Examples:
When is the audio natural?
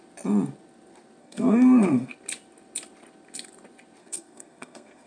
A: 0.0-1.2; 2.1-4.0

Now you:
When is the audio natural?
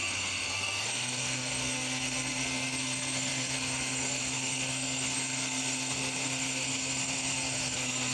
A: none